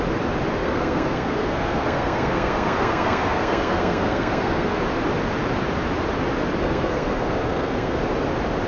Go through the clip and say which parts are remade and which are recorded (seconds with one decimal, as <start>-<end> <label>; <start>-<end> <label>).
0.0-0.6 recorded; 0.6-4.8 remade; 4.8-6.6 recorded; 6.6-8.0 remade; 8.0-8.7 recorded